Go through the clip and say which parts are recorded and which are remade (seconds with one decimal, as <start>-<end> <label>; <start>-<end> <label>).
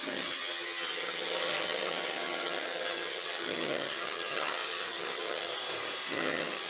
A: 0.0-5.5 remade; 5.5-6.1 recorded; 6.1-6.7 remade